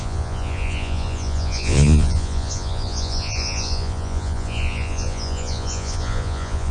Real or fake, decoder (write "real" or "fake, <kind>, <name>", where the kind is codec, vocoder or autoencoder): fake, vocoder, Vocos